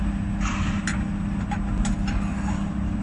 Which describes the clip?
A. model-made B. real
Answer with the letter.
B